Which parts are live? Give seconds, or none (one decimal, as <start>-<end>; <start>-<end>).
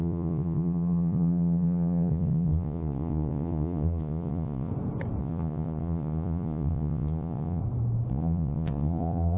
4.7-5.2; 7.6-8.1